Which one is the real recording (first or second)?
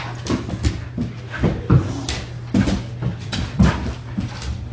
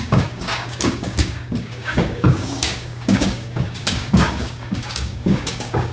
first